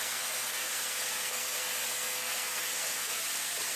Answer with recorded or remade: remade